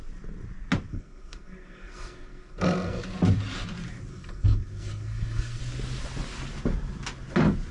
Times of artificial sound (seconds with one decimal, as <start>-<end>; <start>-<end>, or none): 0.9-3.0; 4.1-5.6